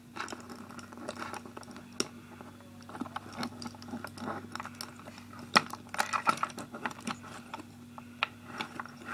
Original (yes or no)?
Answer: yes